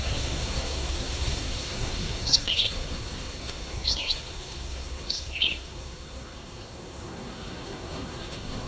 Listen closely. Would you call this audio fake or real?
fake